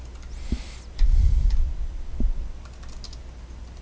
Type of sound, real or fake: real